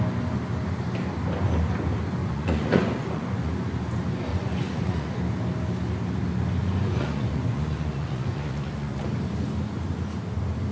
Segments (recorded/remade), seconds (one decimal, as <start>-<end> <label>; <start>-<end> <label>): 0.0-2.2 recorded; 2.2-3.5 remade; 3.5-4.3 recorded; 4.3-5.2 remade; 5.2-6.6 recorded; 6.6-9.1 remade; 9.1-10.7 recorded